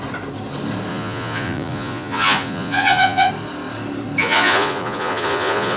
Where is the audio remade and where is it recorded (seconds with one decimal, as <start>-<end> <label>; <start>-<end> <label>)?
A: 0.0-0.9 recorded; 0.9-3.3 remade; 3.3-4.2 recorded; 4.2-5.8 remade